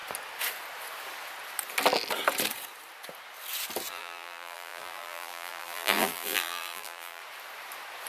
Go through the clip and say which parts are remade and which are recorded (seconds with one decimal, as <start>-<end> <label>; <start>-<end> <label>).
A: 0.0-3.9 recorded; 3.9-7.2 remade; 7.2-8.1 recorded